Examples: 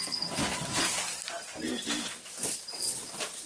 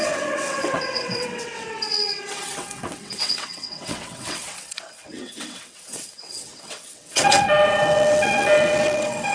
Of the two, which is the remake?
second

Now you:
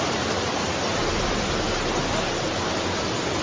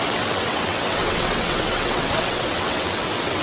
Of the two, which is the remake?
second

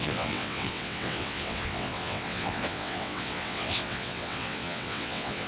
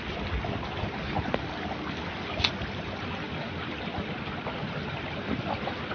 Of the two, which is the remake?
first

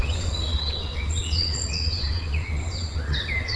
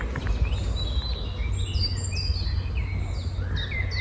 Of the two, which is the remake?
first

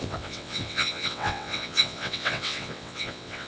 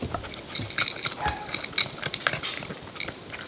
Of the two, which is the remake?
first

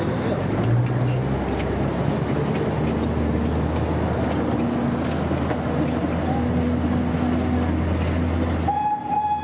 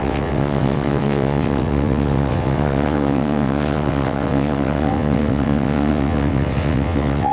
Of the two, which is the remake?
second